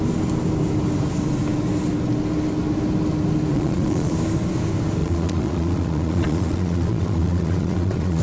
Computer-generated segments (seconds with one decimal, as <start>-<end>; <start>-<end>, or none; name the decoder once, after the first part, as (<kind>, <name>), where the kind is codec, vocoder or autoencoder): 3.5-4.1 (vocoder, Vocos); 5.0-8.2